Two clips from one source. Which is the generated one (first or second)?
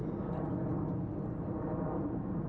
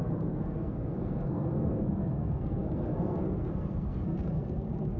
second